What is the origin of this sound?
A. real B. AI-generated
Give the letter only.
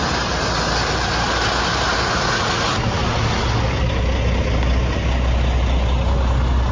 A